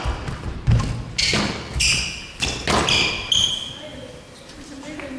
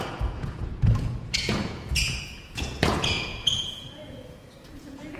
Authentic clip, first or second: first